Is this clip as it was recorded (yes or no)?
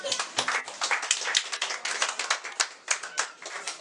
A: yes